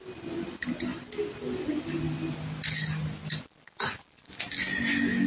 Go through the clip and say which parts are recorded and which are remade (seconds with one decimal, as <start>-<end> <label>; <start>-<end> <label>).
0.0-5.3 recorded